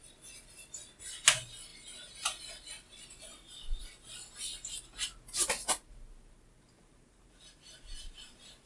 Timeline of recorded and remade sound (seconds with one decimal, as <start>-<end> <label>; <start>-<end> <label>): 0.0-6.8 recorded; 6.8-8.7 remade